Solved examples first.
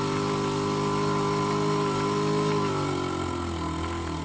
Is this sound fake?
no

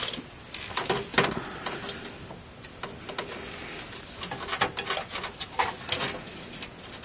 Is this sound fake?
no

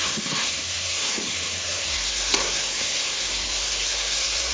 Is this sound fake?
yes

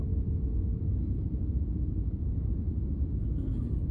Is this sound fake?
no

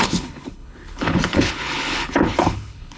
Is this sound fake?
yes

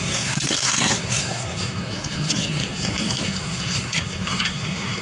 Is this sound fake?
yes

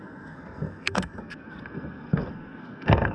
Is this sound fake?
yes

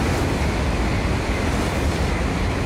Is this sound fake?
no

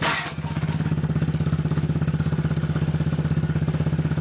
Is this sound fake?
yes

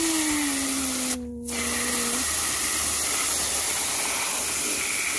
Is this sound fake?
no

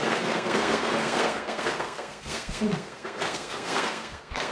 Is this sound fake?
yes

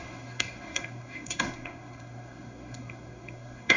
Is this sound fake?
yes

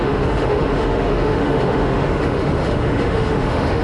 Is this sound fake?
yes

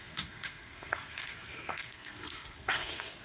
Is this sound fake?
yes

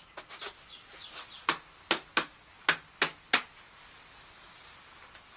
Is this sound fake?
no